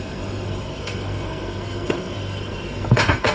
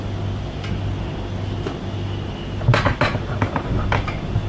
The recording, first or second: second